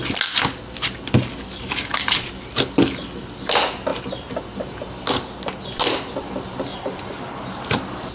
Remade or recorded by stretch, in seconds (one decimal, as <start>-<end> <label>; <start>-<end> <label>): 0.0-1.6 recorded; 1.6-2.5 remade; 2.5-6.7 recorded; 6.7-7.6 remade; 7.6-8.1 recorded